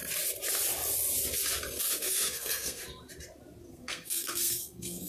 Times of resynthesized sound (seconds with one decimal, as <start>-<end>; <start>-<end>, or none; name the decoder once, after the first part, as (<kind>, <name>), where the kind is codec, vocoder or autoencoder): 1.8-2.8 (codec, SNAC); 3.7-5.1